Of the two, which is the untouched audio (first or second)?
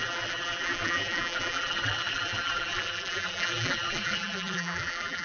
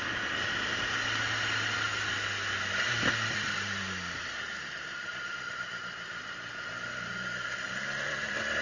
second